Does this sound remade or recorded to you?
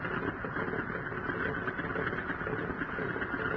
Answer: recorded